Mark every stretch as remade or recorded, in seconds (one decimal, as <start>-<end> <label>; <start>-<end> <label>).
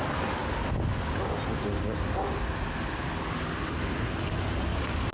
0.0-5.1 recorded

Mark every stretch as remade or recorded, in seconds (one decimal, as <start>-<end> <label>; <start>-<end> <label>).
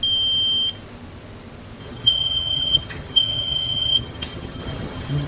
0.0-1.8 recorded; 1.8-5.3 remade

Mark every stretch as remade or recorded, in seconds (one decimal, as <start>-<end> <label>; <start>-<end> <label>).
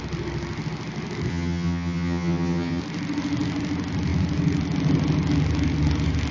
0.0-1.3 recorded; 1.3-2.8 remade; 2.8-6.3 recorded